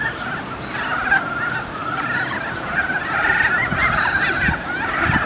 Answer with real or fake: real